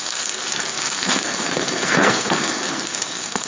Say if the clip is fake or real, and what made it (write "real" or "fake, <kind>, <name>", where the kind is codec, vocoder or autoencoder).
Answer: fake, codec, SNAC